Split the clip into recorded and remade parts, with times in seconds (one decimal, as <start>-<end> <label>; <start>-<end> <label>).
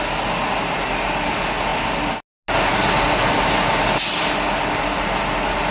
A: 0.0-5.7 recorded